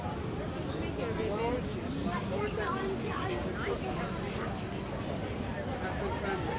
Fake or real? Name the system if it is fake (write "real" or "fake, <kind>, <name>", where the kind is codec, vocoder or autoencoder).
real